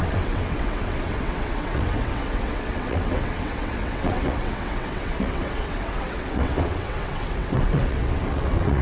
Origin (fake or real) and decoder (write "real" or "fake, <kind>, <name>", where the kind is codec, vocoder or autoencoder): fake, vocoder, WaveNeXt